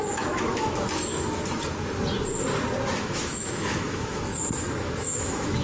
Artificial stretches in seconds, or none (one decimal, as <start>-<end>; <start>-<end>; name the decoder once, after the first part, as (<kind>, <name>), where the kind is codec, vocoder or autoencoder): 0.0-1.4 (autoencoder, DAC-VAE); 3.0-4.3; 4.8-5.6